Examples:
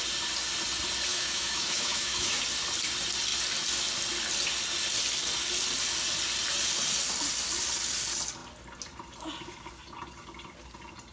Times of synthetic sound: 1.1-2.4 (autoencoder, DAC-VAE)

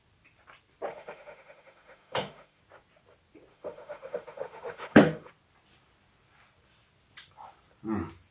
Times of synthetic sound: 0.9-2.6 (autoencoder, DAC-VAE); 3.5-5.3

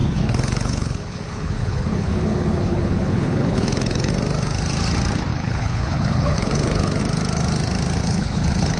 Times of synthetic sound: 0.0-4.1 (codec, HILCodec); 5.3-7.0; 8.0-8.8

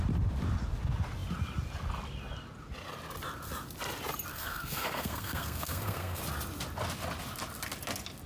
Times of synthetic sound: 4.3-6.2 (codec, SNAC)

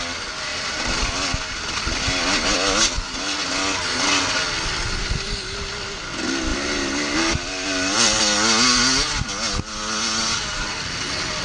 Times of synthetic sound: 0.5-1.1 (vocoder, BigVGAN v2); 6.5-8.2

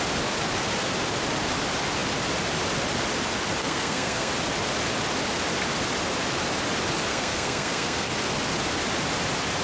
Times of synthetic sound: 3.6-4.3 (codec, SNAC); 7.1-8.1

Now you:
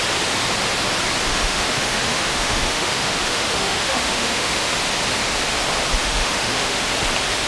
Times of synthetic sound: 1.3-4.7 (autoencoder, DAC-VAE); 6.0-6.8